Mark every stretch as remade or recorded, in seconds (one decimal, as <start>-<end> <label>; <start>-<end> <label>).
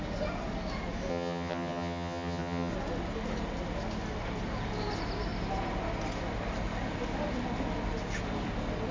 0.0-1.1 recorded; 1.1-2.7 remade; 2.7-8.9 recorded